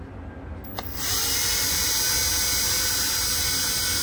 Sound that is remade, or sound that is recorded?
recorded